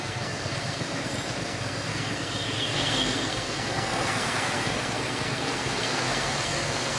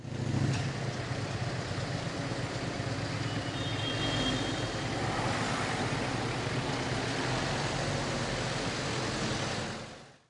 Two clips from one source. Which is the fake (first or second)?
first